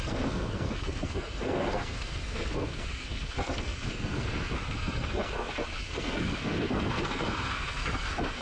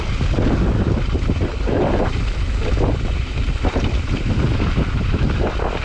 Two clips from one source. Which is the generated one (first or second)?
first